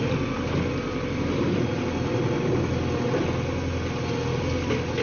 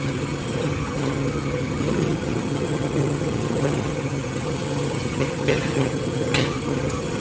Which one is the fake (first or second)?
second